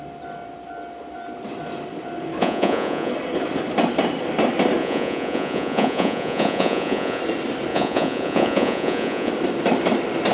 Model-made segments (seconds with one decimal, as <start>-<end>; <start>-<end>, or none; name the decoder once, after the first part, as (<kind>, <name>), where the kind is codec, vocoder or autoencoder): 2.4-3.1 (vocoder, Vocos); 4.8-7.2; 7.7-9.3